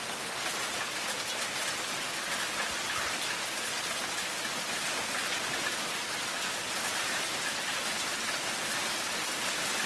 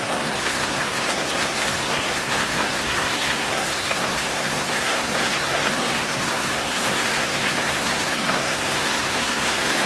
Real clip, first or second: first